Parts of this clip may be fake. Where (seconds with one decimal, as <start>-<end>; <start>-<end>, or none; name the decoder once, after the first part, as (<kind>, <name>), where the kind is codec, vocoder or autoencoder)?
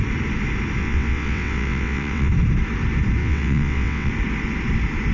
0.8-2.3 (vocoder, WaveNeXt); 3.2-4.1